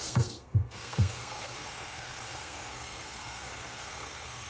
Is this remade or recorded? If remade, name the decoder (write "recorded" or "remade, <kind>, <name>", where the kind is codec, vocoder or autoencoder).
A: remade, codec, SNAC